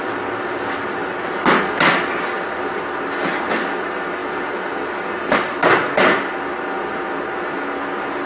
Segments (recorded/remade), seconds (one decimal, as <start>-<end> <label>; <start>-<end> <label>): 0.0-8.3 recorded